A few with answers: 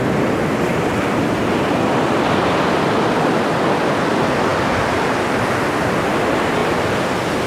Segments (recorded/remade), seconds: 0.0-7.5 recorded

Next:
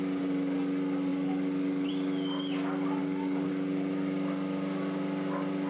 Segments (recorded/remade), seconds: 0.0-1.1 recorded; 1.1-1.9 remade; 1.9-3.0 recorded; 3.0-3.5 remade; 3.5-5.7 recorded

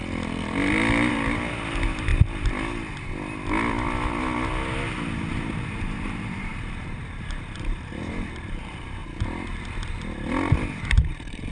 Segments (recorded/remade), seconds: 0.0-1.1 recorded; 1.1-2.1 remade; 2.1-5.3 recorded; 5.3-9.0 remade; 9.0-10.5 recorded; 10.5-11.5 remade

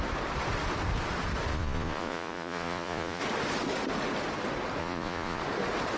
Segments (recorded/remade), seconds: 0.0-1.5 recorded; 1.5-3.2 remade; 3.2-4.8 recorded; 4.8-5.4 remade; 5.4-6.0 recorded